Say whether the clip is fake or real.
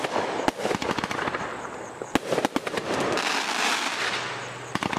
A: real